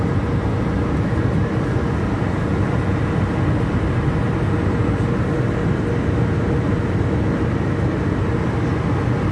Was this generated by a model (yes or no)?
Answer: no